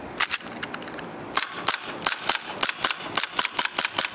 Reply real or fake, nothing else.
real